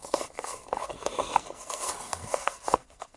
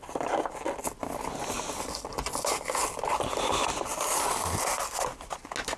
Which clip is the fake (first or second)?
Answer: first